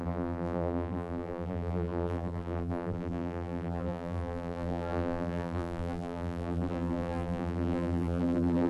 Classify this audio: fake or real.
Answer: fake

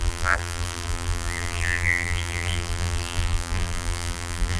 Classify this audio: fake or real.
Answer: fake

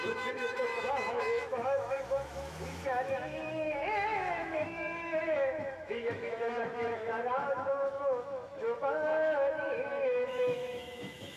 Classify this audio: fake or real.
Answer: fake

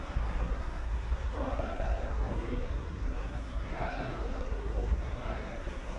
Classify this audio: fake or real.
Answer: fake